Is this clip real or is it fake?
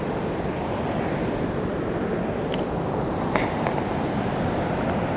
real